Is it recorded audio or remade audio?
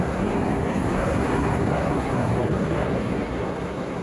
remade